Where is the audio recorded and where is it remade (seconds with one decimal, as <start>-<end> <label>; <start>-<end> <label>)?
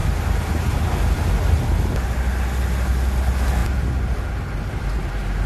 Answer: 0.0-5.5 recorded